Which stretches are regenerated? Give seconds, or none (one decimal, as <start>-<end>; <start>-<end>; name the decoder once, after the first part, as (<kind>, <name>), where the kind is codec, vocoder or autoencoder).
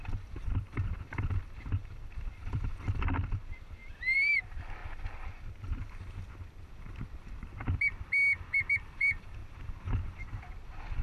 0.0-4.8 (vocoder, BigVGAN v2); 8.4-9.4; 10.2-11.0